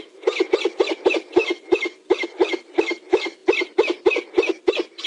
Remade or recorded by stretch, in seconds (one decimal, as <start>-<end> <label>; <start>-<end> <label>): 0.0-5.1 recorded